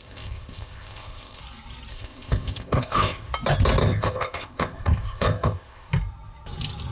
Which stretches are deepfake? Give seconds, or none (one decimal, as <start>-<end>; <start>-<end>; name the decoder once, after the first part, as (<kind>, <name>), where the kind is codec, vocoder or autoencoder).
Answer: 0.0-1.4 (codec, ZipCodec); 1.9-3.3; 3.8-5.9